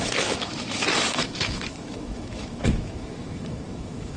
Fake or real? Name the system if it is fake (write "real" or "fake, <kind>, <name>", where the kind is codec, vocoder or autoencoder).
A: fake, autoencoder, DAC-VAE